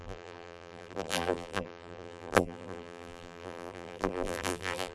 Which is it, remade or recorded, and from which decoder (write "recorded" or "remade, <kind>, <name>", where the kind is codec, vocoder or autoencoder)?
remade, vocoder, BigVGAN v2